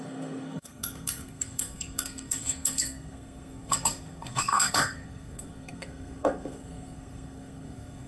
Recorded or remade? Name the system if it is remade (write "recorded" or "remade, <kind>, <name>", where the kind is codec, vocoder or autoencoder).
remade, codec, SNAC